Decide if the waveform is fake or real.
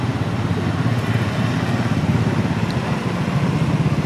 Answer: real